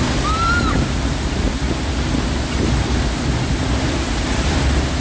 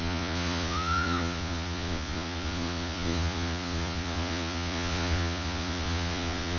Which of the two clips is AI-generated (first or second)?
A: second